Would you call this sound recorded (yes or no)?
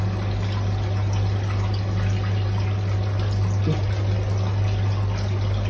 yes